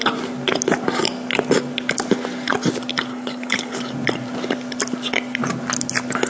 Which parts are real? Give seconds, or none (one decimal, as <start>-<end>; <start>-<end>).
0.0-3.1; 3.8-6.3